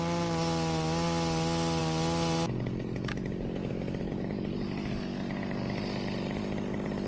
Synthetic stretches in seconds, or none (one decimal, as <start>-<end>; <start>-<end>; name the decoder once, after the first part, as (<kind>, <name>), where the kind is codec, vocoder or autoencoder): none